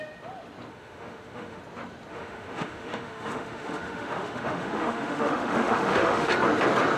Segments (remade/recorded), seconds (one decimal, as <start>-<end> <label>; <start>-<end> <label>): 0.0-0.7 recorded; 0.7-1.6 remade; 1.6-2.1 recorded; 2.1-6.3 remade; 6.3-7.0 recorded